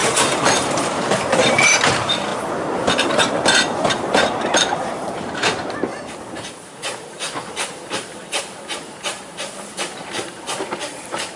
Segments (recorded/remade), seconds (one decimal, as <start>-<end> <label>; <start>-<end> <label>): 0.0-2.3 remade; 2.3-3.1 recorded; 3.1-5.9 remade; 5.9-6.6 recorded; 6.6-11.4 remade